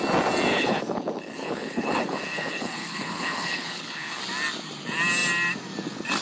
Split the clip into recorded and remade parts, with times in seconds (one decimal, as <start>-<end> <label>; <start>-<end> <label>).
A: 0.0-0.5 recorded; 0.5-4.2 remade; 4.2-6.2 recorded